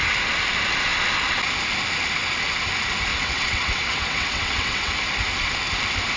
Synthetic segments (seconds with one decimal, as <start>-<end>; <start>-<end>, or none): 3.1-4.9

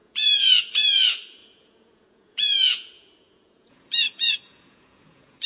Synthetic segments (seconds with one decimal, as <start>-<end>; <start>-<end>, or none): 0.0-5.5

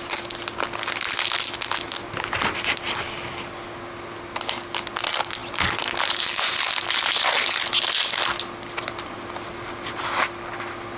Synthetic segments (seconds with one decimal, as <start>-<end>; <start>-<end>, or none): none

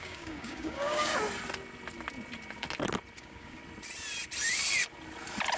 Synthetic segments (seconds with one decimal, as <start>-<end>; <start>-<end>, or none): 0.0-1.1; 3.2-3.6

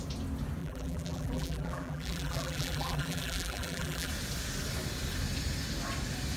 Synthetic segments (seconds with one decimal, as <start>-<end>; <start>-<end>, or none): 0.6-4.1

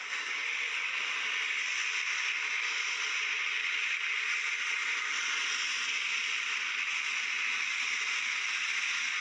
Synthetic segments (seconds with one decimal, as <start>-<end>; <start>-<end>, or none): 0.4-1.2

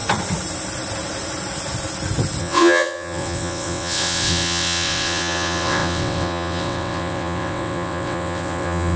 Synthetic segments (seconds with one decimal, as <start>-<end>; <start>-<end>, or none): 2.4-9.0

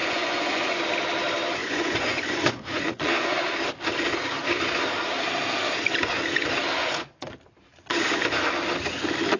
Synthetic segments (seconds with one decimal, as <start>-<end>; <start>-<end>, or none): 0.0-0.8; 1.6-3.4; 6.8-7.3